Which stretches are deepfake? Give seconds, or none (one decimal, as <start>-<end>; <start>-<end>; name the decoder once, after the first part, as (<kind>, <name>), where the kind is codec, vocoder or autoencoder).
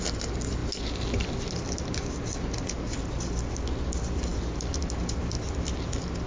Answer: none